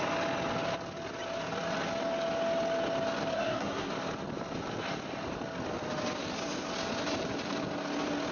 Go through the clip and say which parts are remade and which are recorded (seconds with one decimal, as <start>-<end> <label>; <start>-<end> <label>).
0.0-3.3 recorded; 3.3-3.9 remade; 3.9-8.3 recorded